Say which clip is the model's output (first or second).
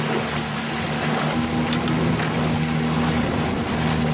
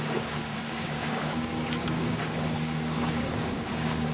second